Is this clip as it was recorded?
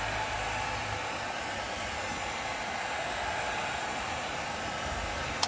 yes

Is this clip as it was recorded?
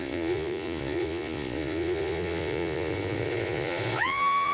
no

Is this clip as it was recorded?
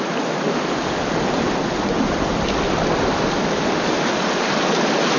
yes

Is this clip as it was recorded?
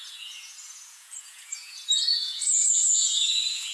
no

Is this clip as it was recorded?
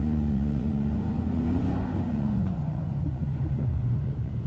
no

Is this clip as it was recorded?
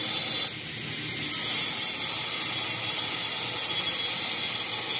yes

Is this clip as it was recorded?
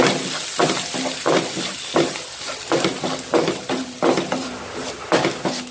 yes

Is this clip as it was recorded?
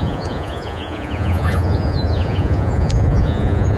no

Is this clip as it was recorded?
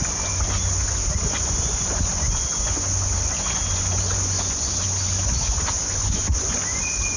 no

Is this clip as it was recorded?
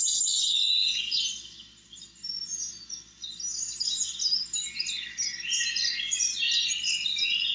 yes